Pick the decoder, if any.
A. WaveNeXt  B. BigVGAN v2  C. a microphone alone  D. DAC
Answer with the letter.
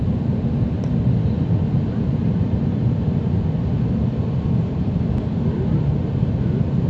C